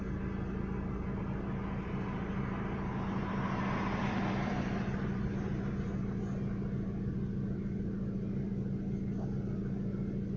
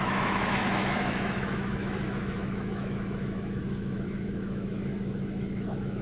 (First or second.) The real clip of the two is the first